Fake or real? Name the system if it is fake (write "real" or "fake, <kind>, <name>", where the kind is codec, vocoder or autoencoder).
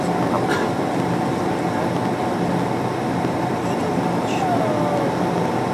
real